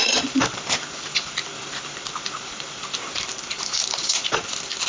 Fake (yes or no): yes